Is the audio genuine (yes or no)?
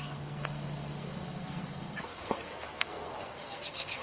no